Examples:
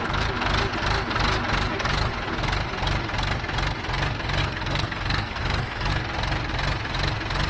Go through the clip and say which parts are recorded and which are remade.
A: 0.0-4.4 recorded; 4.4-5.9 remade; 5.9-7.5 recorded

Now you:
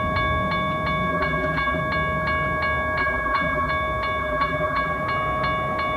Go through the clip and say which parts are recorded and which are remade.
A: 0.0-1.1 recorded; 1.1-1.8 remade; 1.8-3.0 recorded; 3.0-3.7 remade; 3.7-4.2 recorded; 4.2-5.0 remade; 5.0-6.0 recorded

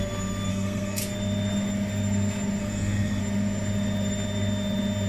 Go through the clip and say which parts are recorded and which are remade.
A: 0.0-0.5 recorded; 0.5-1.0 remade; 1.0-2.6 recorded; 2.6-3.2 remade; 3.2-5.1 recorded

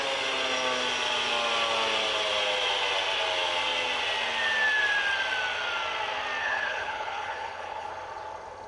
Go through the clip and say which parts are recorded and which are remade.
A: 0.0-6.4 recorded; 6.4-7.9 remade; 7.9-8.7 recorded

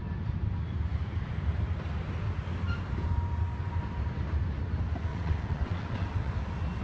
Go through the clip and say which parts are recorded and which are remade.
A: 0.0-5.1 recorded; 5.1-6.3 remade; 6.3-6.8 recorded

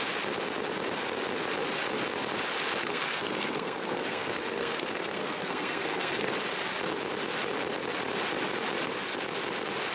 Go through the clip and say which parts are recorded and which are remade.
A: 0.0-2.8 recorded; 2.8-6.3 remade; 6.3-9.9 recorded

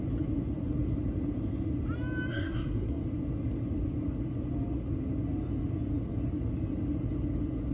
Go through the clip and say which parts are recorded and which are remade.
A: 0.0-2.3 recorded; 2.3-3.0 remade; 3.0-7.7 recorded